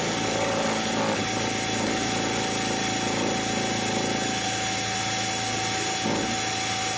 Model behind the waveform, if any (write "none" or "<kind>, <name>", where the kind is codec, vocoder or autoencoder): none